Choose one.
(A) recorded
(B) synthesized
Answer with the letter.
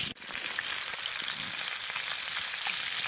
A